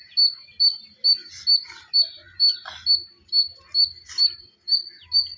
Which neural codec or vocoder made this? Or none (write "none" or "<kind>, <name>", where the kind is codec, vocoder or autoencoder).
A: none